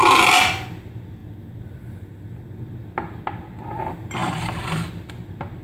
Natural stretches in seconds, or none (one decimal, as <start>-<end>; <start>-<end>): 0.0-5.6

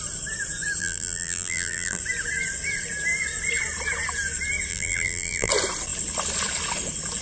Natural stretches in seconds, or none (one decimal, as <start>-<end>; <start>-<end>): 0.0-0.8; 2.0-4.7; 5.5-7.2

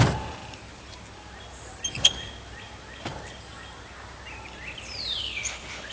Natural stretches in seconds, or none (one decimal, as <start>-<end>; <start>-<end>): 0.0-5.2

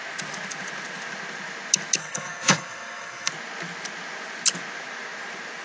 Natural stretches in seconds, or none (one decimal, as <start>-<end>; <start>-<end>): 0.0-2.0; 3.3-5.6

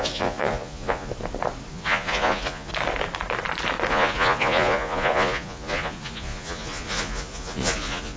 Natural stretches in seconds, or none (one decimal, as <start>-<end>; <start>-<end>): 1.1-1.7; 2.7-3.9